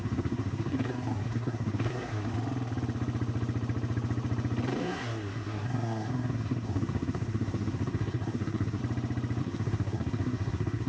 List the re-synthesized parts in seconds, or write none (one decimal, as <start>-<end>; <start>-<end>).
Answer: 0.0-2.3; 4.8-8.8; 9.4-10.9